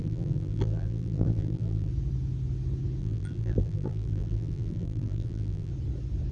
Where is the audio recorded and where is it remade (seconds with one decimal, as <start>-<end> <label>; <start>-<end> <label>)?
0.0-1.9 remade; 1.9-3.0 recorded; 3.0-5.7 remade; 5.7-6.3 recorded